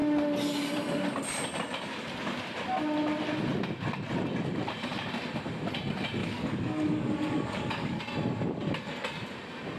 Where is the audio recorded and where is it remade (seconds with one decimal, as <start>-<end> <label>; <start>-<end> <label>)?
0.0-6.2 recorded; 6.2-8.0 remade; 8.0-9.8 recorded

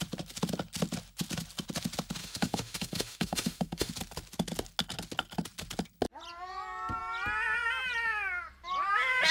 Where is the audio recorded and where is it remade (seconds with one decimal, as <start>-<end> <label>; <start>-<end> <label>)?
0.0-2.2 recorded; 2.2-3.9 remade; 3.9-9.3 recorded

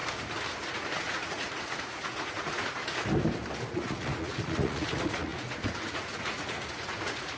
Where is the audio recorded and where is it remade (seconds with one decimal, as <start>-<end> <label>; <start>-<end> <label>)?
0.0-0.7 recorded; 0.7-2.8 remade; 2.8-3.7 recorded; 3.7-7.4 remade

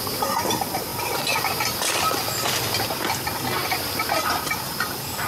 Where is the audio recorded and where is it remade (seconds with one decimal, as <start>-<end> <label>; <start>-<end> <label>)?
0.0-5.3 recorded

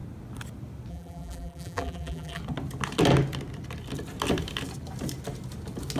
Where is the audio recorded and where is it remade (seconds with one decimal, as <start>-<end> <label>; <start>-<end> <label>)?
0.0-0.9 recorded; 0.9-2.4 remade; 2.4-6.0 recorded

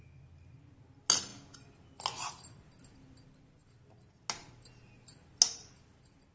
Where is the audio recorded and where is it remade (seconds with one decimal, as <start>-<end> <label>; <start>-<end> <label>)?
0.0-6.3 recorded